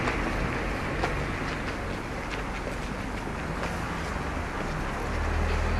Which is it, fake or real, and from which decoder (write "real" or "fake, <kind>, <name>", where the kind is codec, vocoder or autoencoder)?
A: real